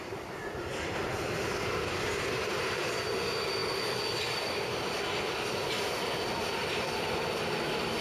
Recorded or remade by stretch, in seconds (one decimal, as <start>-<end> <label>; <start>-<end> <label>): 0.0-0.7 recorded; 0.7-3.2 remade; 3.2-6.6 recorded; 6.6-7.3 remade; 7.3-8.0 recorded